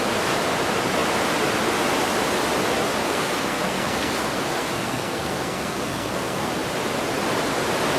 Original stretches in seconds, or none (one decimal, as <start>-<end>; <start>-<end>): 0.0-3.0; 6.5-8.0